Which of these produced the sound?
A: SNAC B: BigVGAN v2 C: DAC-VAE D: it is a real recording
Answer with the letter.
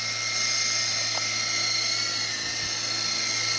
D